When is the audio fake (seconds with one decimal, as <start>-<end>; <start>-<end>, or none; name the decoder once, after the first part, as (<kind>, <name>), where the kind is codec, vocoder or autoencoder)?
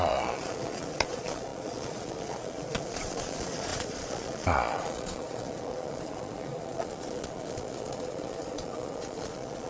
0.0-9.7 (vocoder, Vocos)